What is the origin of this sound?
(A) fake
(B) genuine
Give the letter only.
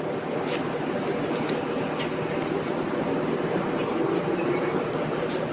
B